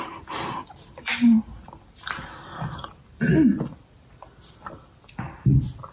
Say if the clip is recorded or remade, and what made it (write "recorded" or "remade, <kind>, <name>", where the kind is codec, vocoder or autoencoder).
remade, vocoder, BigVGAN v2